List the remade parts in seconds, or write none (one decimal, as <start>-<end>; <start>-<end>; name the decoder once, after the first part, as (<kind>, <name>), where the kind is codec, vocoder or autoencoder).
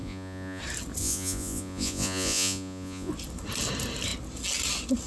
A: 0.0-0.6 (vocoder, Vocos); 1.0-3.1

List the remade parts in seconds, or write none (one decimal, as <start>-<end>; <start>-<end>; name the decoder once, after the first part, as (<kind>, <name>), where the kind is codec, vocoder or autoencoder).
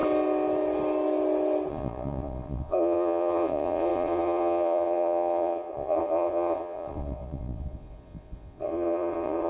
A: 1.7-9.5 (vocoder, Vocos)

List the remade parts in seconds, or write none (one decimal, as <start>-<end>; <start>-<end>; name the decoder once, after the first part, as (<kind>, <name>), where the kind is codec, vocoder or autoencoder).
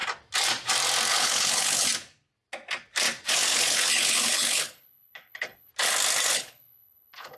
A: 1.1-1.9 (codec, HILCodec); 3.3-5.7; 6.3-7.4